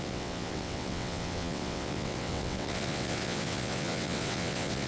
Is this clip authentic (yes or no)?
no